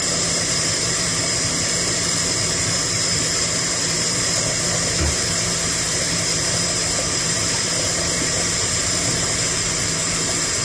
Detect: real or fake fake